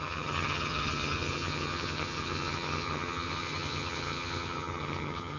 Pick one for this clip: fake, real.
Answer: fake